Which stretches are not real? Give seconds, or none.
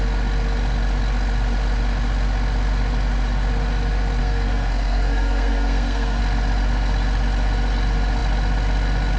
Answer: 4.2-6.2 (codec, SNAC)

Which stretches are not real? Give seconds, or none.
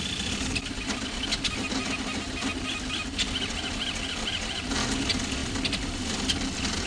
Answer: none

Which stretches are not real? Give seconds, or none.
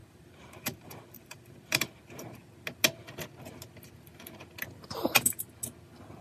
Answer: 0.0-1.9 (vocoder, BigVGAN v2)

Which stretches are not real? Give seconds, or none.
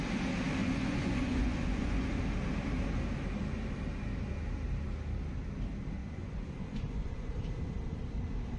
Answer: 0.6-2.2 (vocoder, Vocos); 6.0-7.3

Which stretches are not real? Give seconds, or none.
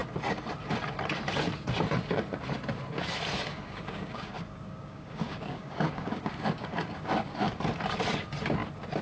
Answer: 3.5-7.6 (codec, DAC)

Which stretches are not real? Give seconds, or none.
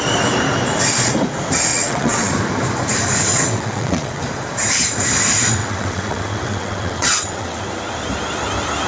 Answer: 1.7-2.3 (vocoder, WaveNeXt); 3.3-4.2; 5.6-7.6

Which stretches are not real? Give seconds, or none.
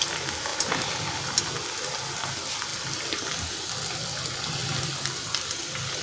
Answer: none